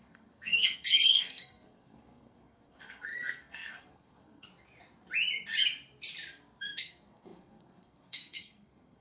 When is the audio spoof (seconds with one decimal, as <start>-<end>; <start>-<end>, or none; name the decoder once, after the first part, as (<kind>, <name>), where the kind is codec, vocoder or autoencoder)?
0.0-4.5 (codec, SNAC); 6.6-9.0